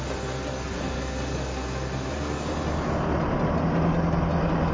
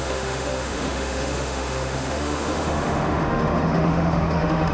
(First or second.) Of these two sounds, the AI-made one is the second